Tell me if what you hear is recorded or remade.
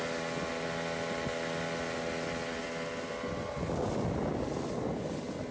recorded